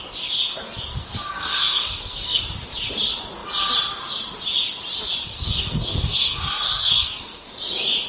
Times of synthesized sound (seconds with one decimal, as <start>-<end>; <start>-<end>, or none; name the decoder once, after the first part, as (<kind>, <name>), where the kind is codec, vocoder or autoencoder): 0.9-2.4 (codec, SNAC); 5.2-7.5